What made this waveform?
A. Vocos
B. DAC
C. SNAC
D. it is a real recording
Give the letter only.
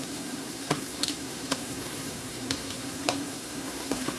C